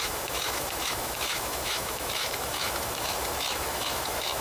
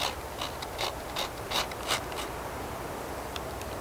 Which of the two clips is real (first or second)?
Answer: second